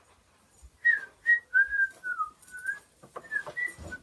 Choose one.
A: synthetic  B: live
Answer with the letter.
B